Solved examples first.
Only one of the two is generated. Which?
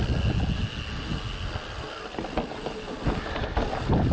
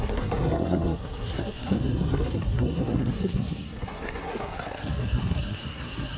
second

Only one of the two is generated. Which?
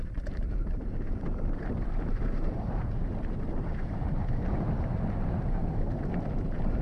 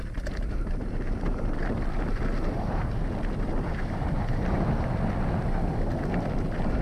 first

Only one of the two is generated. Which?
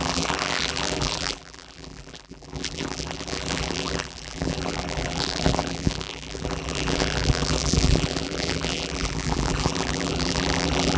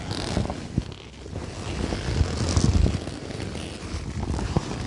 first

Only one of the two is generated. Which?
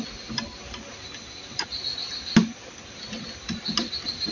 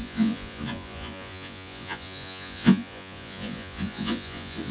second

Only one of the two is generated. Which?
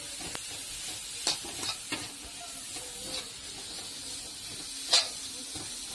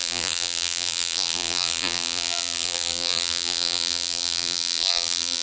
second